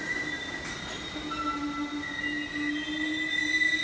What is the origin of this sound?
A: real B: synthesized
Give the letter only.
A